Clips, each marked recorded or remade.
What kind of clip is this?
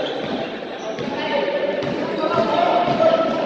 recorded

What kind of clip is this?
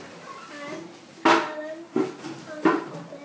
recorded